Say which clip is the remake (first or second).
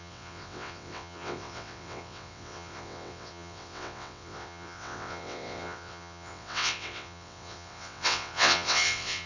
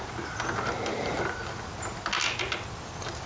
first